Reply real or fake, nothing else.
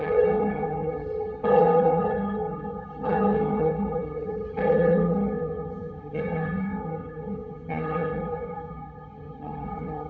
fake